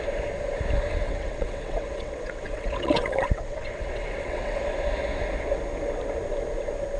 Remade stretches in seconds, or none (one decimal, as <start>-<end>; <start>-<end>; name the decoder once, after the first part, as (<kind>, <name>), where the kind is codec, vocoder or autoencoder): 0.9-4.6 (vocoder, WaveNeXt)